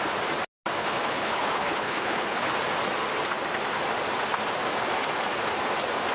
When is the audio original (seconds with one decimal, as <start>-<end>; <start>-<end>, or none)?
0.0-0.8; 2.5-6.1